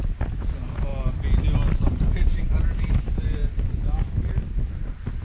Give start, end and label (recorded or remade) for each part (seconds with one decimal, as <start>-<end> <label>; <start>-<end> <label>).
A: 0.0-5.2 recorded